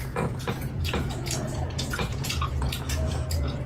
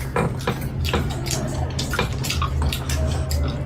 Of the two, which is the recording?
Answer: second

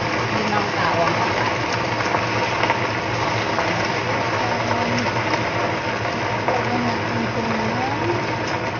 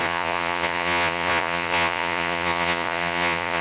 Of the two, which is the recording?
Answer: first